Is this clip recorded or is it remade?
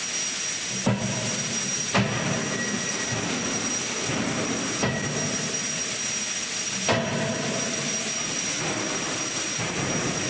recorded